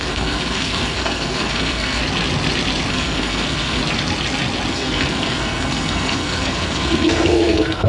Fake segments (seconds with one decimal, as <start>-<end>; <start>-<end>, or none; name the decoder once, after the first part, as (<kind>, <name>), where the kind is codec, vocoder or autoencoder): 0.0-2.0 (codec, SNAC); 2.9-3.8; 4.7-7.9

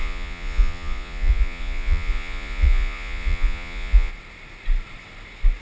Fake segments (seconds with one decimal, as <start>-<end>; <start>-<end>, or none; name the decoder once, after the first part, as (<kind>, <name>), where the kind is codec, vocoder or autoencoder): 0.0-4.1 (vocoder, Vocos)

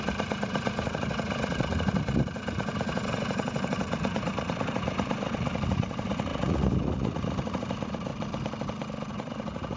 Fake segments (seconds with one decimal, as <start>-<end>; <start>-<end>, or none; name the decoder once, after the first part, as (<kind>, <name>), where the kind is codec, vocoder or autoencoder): 0.0-8.1 (vocoder, Vocos); 9.1-9.8

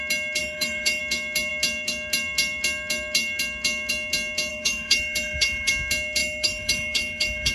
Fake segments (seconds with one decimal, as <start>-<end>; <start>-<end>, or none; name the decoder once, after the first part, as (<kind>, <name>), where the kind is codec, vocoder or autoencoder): 0.4-1.0 (autoencoder, DAC-VAE); 4.5-5.7; 6.2-7.5

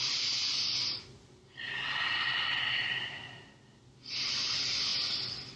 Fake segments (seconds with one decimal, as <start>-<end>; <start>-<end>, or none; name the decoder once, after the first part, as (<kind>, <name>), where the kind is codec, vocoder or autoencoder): none

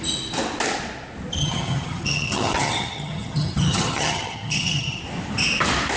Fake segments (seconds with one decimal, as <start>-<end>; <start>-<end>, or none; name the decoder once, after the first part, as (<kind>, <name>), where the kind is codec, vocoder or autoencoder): 1.4-5.0 (vocoder, HiFi-GAN)